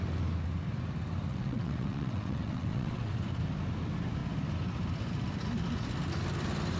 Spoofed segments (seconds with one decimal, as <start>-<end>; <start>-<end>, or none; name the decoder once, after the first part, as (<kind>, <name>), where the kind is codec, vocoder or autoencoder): 1.3-3.1 (vocoder, WaveNeXt)